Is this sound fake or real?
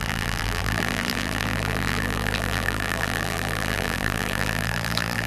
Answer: fake